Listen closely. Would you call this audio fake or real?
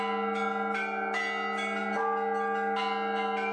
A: real